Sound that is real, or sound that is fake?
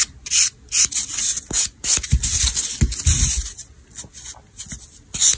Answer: real